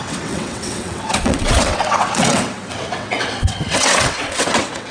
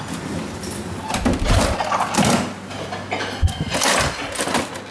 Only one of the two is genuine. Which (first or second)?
second